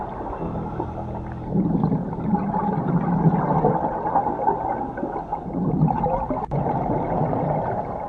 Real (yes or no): yes